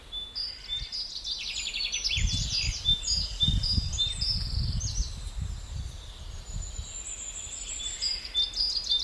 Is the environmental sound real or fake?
real